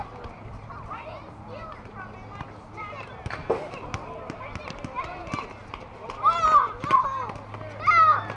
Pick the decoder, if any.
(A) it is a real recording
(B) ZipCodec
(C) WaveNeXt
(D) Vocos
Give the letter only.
A